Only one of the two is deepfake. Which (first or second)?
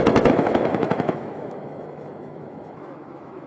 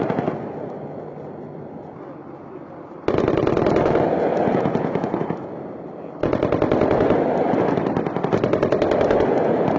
first